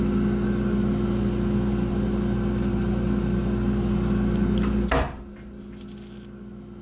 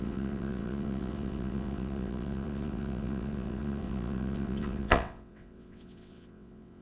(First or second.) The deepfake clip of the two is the second